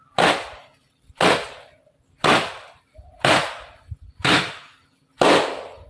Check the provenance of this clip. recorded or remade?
recorded